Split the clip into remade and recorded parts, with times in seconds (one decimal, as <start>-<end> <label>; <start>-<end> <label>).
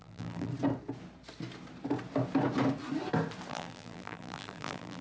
0.0-0.5 remade; 0.5-3.5 recorded; 3.5-5.0 remade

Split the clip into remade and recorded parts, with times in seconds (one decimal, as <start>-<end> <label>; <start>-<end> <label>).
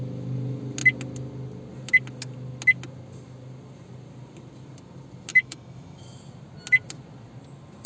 0.0-5.3 recorded; 5.3-6.0 remade; 6.0-7.9 recorded